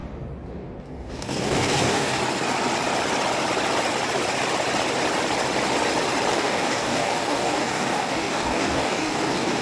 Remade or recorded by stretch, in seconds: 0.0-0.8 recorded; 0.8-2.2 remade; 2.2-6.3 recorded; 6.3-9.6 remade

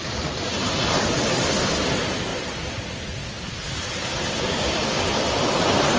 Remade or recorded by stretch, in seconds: 0.0-4.5 recorded; 4.5-5.1 remade; 5.1-6.0 recorded

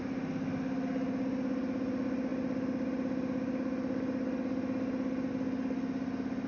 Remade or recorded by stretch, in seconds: 0.0-6.5 recorded

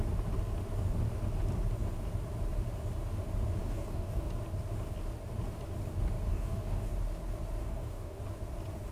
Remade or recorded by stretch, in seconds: 0.0-3.6 recorded; 3.6-4.3 remade; 4.3-6.3 recorded; 6.3-6.9 remade; 6.9-7.6 recorded; 7.6-8.2 remade; 8.2-8.9 recorded

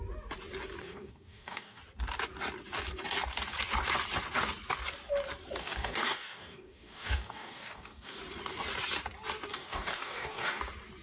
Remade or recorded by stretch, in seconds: 0.0-0.8 recorded; 0.8-1.8 remade; 1.8-5.6 recorded; 5.6-8.2 remade; 8.2-9.5 recorded; 9.5-10.6 remade; 10.6-11.0 recorded

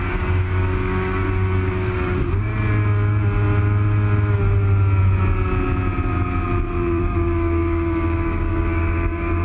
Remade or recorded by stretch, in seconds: 0.0-2.5 remade; 2.5-7.0 recorded; 7.0-9.4 remade

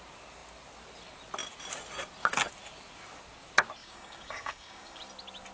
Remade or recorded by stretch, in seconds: 0.0-3.8 recorded; 3.8-5.0 remade; 5.0-5.5 recorded

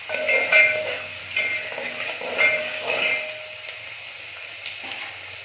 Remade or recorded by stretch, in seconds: 0.0-0.5 recorded; 0.5-1.2 remade; 1.2-2.6 recorded; 2.6-3.1 remade; 3.1-5.4 recorded